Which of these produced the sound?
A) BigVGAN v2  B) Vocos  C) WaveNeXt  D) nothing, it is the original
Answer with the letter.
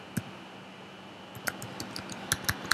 D